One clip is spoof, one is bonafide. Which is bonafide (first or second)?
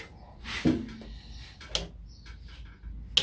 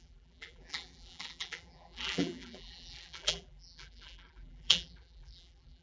first